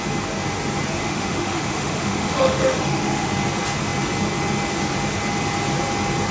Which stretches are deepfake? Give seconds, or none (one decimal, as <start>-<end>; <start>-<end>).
1.0-3.3